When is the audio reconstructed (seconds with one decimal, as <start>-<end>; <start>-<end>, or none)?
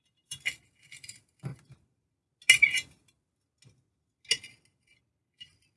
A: 0.0-1.5; 5.0-5.8